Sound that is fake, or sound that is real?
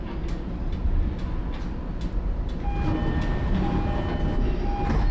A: real